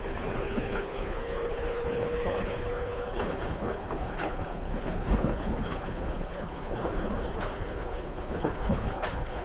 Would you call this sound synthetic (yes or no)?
yes